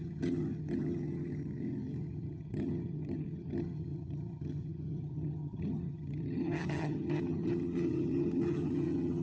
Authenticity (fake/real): fake